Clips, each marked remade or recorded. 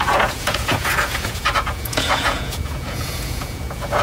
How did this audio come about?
remade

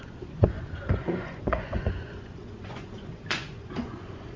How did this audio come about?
remade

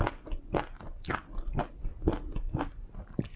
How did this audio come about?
recorded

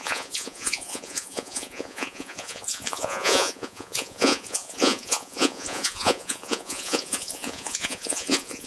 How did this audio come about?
remade